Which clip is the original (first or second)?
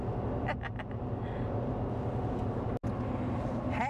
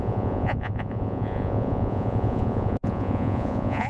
first